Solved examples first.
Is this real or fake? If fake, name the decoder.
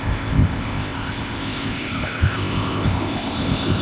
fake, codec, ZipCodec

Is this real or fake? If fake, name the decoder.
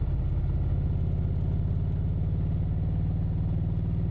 real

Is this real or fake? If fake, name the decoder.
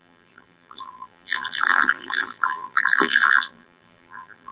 fake, vocoder, BigVGAN v2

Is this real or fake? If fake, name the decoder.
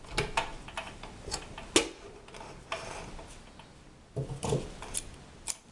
real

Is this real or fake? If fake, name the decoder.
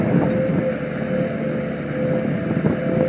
real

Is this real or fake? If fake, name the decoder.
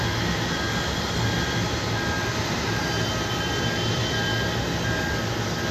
real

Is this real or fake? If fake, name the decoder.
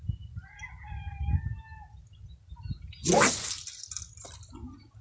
real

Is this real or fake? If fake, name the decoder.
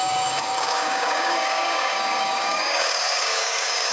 fake, codec, DAC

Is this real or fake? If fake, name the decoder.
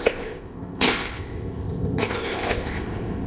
fake, codec, ZipCodec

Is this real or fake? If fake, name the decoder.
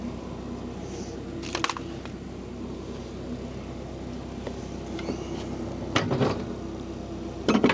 real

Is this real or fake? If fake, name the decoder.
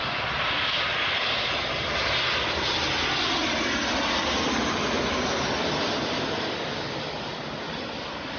real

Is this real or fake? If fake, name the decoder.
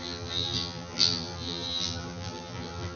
fake, vocoder, BigVGAN v2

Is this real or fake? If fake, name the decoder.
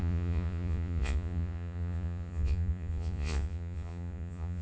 fake, vocoder, Vocos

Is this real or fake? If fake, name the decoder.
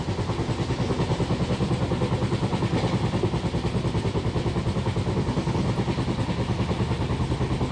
real